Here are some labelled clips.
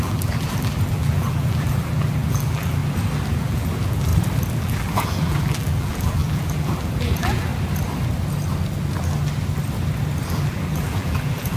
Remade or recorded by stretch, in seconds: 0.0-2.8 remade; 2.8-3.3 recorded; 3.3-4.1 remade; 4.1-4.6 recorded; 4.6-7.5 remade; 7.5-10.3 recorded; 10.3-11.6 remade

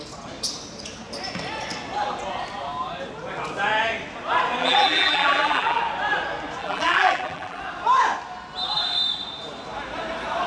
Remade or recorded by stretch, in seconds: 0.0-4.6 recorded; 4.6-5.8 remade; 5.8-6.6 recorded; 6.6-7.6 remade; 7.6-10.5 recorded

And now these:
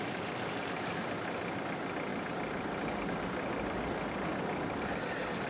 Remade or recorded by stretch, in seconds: 0.0-5.5 recorded